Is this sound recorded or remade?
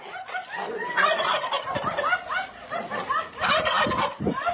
remade